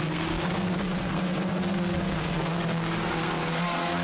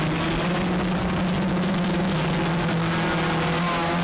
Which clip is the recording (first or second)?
second